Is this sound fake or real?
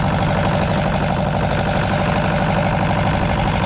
real